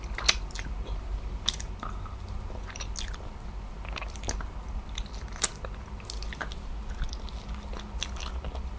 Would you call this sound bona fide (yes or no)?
yes